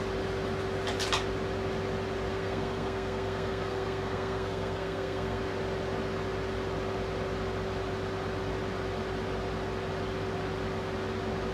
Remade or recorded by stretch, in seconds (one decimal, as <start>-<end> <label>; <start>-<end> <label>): 0.0-2.3 recorded; 2.3-5.4 remade; 5.4-11.5 recorded